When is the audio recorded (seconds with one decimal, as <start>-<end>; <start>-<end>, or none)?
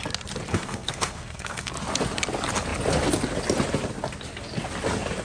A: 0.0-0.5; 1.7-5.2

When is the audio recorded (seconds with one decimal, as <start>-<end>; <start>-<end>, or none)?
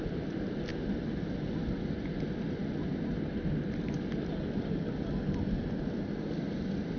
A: 0.0-7.0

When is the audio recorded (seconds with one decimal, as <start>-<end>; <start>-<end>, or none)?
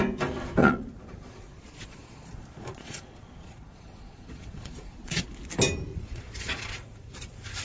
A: 0.0-0.6; 5.2-5.9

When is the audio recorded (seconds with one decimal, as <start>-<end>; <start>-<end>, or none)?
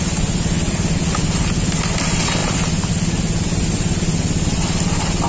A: 0.0-5.3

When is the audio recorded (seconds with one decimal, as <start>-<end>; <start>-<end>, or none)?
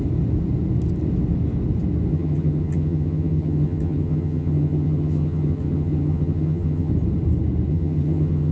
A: 0.0-2.1; 6.9-7.7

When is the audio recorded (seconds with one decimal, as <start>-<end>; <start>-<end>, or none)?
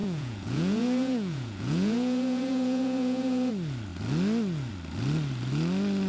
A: 3.5-6.1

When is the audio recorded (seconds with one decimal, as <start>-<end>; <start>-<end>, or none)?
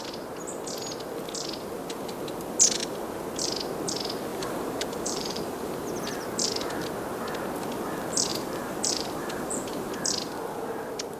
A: 0.0-4.3; 5.7-8.3; 9.9-11.2